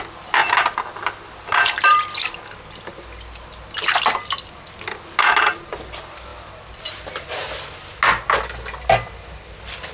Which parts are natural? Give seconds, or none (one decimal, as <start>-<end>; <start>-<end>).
0.0-9.9